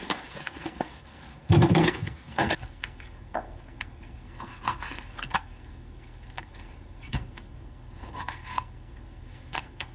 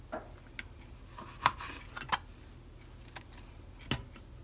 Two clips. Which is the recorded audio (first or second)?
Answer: second